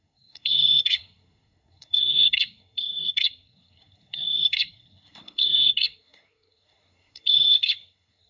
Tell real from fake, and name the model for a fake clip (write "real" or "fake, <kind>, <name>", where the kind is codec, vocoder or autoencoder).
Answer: fake, codec, SNAC